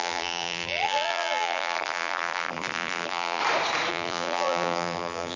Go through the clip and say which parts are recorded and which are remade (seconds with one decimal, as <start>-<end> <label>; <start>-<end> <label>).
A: 0.0-3.4 remade; 3.4-3.9 recorded; 3.9-5.4 remade